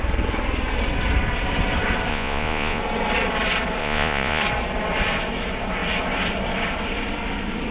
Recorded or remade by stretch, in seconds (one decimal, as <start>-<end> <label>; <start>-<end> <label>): 0.0-2.1 recorded; 2.1-2.8 remade; 2.8-3.8 recorded; 3.8-4.4 remade; 4.4-7.7 recorded